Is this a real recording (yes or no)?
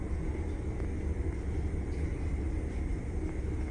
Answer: yes